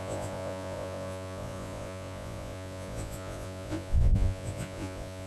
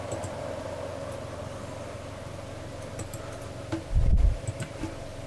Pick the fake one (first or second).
first